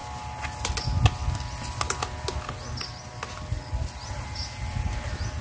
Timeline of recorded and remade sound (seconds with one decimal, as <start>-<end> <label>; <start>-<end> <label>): 0.0-5.4 recorded